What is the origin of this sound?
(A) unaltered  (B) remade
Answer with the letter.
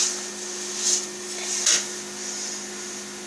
A